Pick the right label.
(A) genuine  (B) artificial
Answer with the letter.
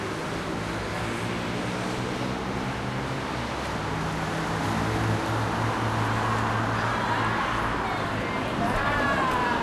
A